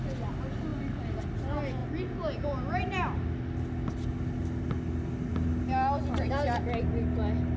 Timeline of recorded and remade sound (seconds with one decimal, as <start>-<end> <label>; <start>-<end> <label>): 0.0-7.6 recorded